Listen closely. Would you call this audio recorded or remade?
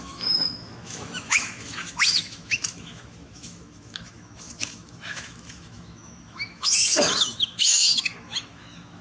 remade